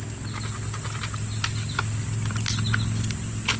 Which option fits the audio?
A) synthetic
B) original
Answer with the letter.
B